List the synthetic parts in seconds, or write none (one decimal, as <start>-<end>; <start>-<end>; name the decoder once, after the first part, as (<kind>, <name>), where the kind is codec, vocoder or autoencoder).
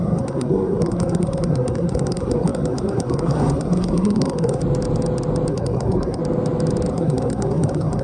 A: 0.0-4.6 (codec, SNAC); 5.5-6.2; 6.9-8.0